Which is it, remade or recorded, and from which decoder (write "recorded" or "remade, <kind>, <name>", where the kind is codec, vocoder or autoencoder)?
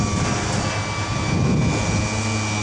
recorded